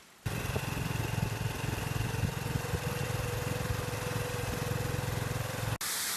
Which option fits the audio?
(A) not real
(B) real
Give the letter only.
B